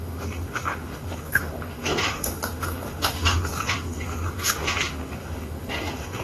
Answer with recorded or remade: remade